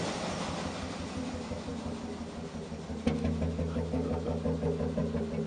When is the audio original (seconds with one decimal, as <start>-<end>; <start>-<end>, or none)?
0.0-5.5